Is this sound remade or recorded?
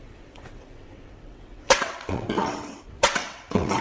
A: remade